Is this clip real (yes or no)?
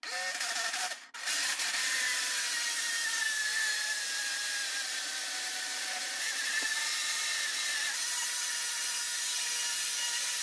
yes